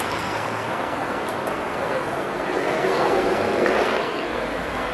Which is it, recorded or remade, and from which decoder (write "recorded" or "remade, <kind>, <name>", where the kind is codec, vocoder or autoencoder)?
remade, codec, SNAC